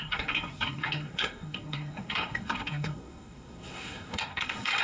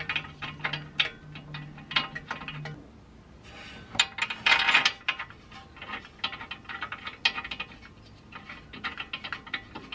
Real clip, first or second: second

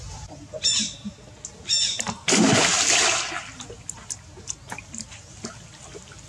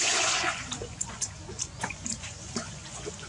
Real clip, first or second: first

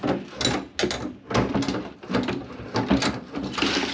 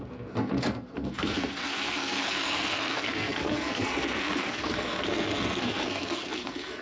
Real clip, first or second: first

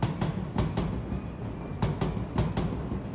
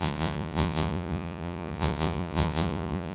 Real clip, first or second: first